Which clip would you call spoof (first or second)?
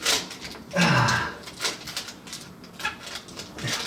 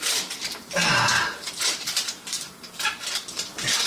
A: second